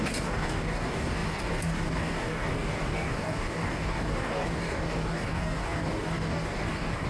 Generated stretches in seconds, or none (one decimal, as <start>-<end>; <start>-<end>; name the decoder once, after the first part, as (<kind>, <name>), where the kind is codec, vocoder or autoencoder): 0.0-7.1 (codec, DAC)